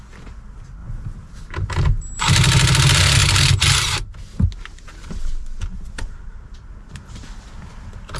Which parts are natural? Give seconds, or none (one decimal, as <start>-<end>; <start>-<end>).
0.0-8.2